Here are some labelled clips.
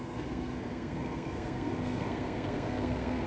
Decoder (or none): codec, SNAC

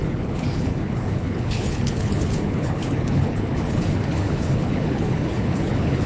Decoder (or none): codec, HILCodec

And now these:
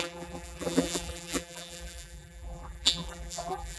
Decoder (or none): vocoder, BigVGAN v2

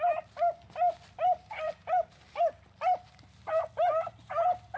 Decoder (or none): none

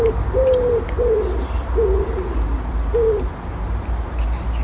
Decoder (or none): none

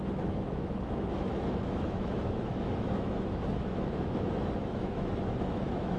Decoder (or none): autoencoder, DAC-VAE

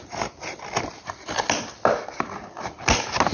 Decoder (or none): none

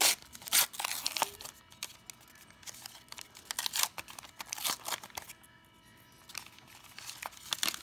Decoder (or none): none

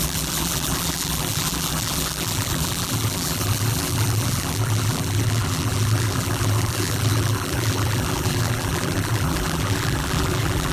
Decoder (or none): vocoder, BigVGAN v2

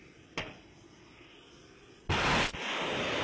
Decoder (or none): none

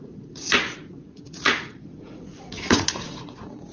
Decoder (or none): vocoder, Vocos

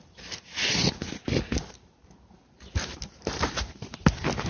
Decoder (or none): none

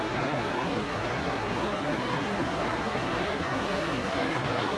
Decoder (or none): codec, SNAC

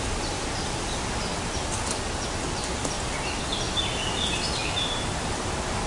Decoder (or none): none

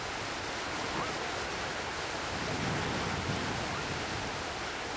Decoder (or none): none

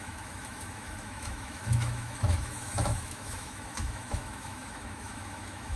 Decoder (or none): autoencoder, DAC-VAE